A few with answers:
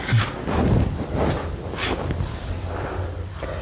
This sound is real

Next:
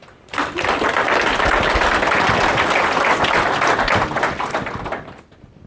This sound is real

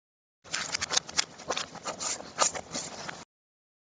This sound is real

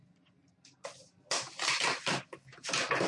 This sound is real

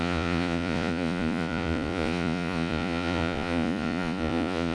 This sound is fake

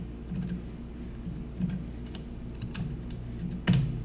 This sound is real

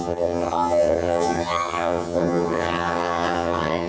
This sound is fake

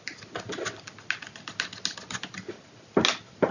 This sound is real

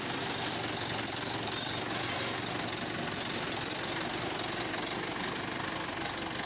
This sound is real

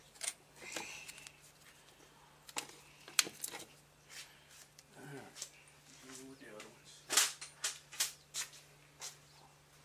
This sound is real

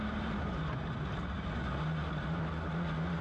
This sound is real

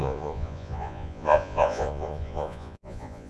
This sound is fake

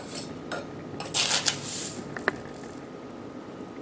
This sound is real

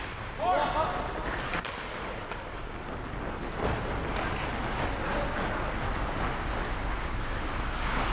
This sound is real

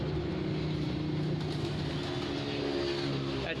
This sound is real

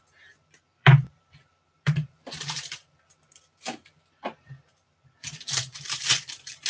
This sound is fake